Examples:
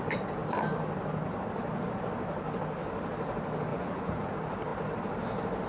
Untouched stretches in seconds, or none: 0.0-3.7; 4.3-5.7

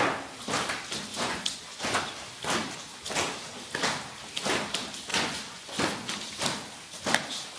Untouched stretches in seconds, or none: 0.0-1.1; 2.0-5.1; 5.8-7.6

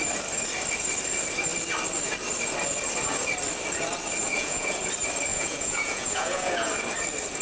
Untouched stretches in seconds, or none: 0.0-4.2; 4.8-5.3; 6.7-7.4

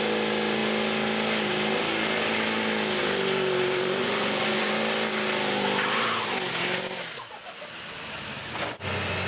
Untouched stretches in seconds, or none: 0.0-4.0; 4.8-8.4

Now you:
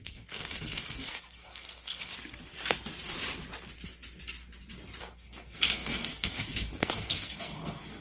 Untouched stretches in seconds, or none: 2.1-5.0

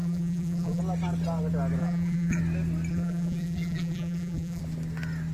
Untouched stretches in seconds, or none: 0.8-1.8; 2.4-2.9; 4.6-5.3

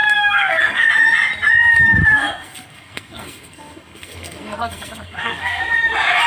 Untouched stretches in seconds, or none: 0.9-1.8; 5.6-6.3